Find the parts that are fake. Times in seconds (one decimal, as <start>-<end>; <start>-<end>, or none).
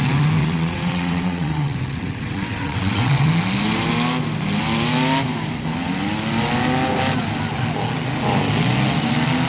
0.4-3.3